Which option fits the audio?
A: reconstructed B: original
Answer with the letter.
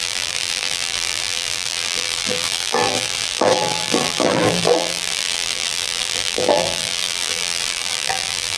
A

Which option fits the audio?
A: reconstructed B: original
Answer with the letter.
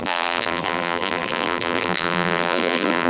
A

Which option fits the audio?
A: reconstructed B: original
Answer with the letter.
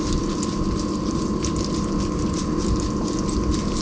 B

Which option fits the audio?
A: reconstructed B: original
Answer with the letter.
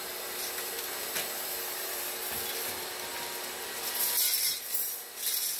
B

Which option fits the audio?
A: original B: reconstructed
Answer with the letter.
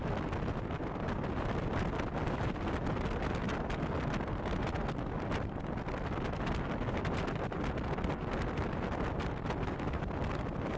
A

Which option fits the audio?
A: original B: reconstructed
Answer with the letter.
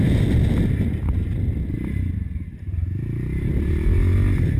A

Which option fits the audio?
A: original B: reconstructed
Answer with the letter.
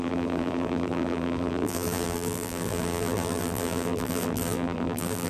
B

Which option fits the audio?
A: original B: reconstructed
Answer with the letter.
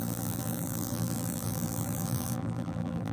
B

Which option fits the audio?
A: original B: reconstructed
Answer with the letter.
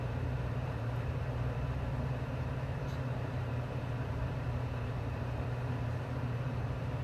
B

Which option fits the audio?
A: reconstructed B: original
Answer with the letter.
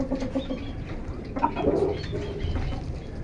B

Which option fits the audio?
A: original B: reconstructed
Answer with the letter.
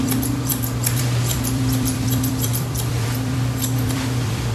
B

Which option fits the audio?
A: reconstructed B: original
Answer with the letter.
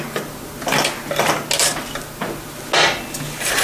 B